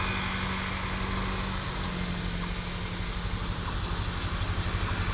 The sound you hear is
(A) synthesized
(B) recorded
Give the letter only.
B